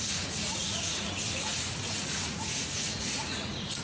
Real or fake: fake